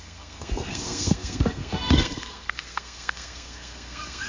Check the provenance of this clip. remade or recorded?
remade